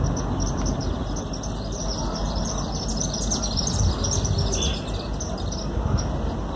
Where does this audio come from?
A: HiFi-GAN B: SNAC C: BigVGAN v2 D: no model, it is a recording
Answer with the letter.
D